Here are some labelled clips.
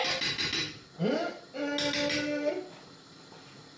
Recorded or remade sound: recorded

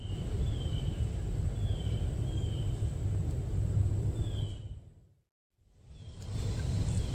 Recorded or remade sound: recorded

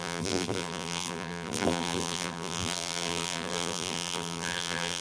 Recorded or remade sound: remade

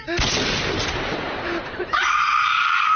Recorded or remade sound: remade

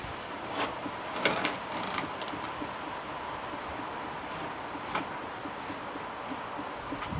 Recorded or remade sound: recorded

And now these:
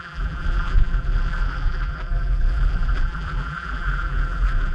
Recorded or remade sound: remade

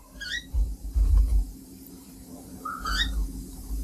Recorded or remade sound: remade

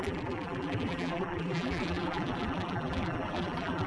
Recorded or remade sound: remade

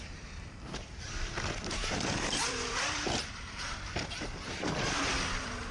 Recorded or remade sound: remade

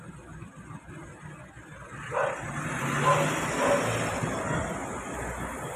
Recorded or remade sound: recorded